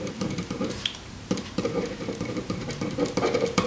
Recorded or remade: remade